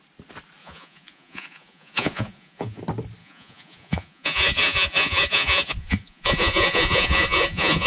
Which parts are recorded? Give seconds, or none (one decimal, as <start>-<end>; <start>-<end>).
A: 0.0-0.6; 2.8-3.2